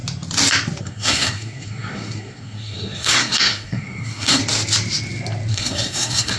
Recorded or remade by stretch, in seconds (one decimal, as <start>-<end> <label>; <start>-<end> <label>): 0.0-0.8 recorded; 0.8-4.4 remade; 4.4-5.5 recorded; 5.5-6.4 remade